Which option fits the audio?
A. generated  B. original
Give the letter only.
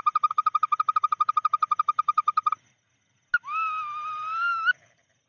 B